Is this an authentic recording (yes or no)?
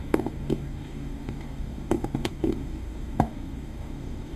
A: no